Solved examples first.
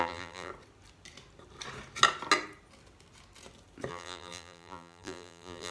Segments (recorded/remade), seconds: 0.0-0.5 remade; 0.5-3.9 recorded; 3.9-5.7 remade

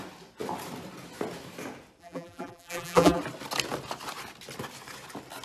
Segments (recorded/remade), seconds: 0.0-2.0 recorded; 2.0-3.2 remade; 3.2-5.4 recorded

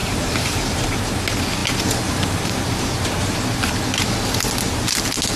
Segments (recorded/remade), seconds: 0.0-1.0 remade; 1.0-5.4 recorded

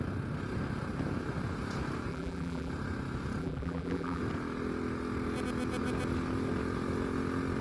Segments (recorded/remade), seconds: 0.0-2.1 recorded; 2.1-2.7 remade; 2.7-3.4 recorded; 3.4-4.2 remade; 4.2-7.6 recorded

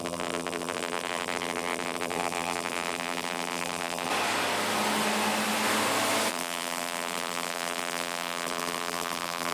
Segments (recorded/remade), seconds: 0.0-4.1 remade; 4.1-6.3 recorded; 6.3-9.5 remade